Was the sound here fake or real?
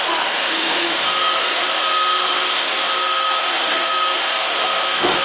fake